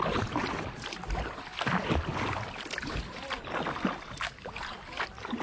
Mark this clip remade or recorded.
recorded